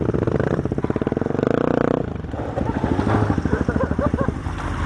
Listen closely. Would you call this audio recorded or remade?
recorded